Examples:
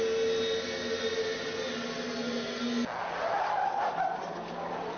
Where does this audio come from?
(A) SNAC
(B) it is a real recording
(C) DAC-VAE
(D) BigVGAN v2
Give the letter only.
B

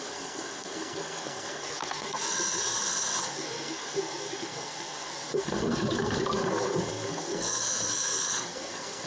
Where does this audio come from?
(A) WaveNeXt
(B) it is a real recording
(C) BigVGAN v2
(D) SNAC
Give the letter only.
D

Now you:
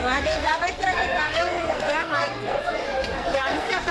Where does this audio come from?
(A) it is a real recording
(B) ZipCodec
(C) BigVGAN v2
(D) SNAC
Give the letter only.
D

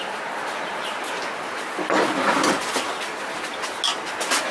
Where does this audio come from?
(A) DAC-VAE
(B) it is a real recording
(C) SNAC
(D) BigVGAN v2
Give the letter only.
B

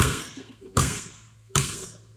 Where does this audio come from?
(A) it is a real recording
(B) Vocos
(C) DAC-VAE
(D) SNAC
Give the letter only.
D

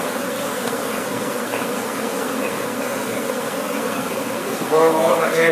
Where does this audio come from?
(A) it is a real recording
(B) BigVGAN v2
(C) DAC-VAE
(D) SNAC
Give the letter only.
D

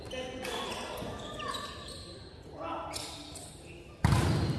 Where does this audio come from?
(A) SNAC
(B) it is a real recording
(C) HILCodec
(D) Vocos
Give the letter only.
B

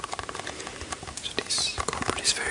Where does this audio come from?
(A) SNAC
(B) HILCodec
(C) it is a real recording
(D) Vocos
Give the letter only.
C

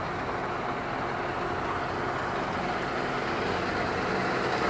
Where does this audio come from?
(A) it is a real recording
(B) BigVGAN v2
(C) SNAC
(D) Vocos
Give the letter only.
A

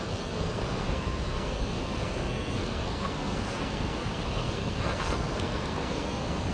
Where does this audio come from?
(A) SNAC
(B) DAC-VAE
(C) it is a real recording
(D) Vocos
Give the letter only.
A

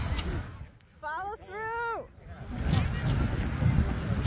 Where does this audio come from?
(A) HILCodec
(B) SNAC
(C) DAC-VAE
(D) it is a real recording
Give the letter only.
D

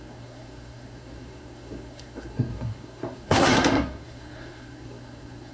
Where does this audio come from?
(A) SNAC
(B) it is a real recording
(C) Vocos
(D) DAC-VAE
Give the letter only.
A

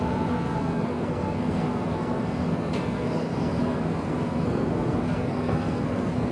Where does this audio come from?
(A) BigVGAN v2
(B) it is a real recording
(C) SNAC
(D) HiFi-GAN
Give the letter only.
C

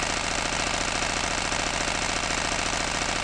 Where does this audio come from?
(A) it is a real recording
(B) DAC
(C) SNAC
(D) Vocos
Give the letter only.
A